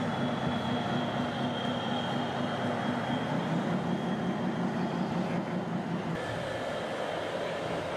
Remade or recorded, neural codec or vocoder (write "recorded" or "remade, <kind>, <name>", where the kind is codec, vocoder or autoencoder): recorded